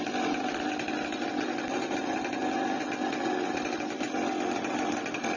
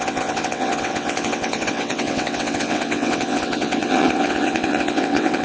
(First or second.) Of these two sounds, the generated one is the second